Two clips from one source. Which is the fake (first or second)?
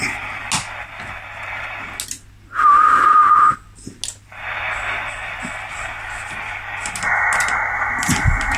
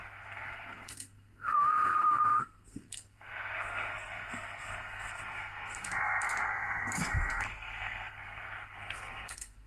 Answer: second